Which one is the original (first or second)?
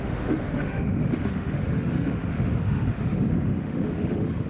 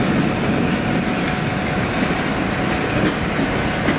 second